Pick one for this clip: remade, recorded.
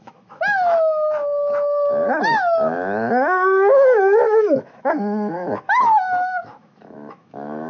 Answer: remade